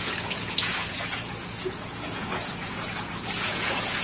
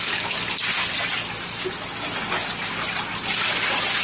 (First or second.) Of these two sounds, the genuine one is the second